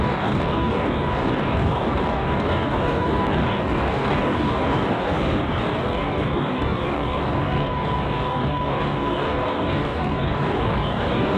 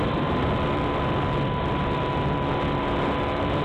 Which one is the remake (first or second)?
first